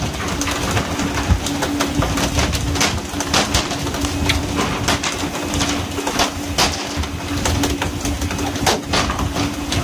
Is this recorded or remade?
recorded